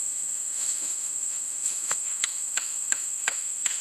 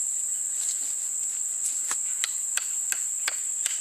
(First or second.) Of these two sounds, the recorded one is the second